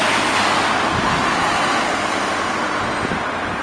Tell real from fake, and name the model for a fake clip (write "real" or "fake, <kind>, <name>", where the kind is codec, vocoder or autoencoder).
real